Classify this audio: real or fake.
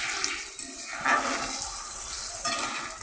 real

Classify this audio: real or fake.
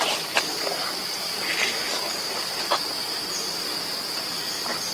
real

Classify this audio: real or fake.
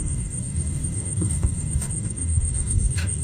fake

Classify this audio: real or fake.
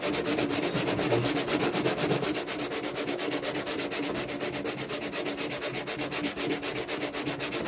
real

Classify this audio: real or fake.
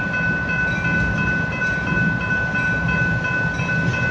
real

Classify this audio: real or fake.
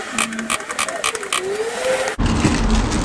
real